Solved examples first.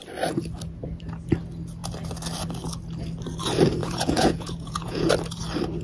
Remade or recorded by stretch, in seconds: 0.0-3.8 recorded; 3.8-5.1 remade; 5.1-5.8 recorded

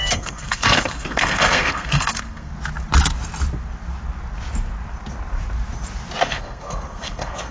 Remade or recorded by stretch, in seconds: 0.0-2.5 remade; 2.5-6.2 recorded; 6.2-7.5 remade